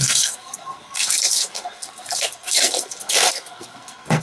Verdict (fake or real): fake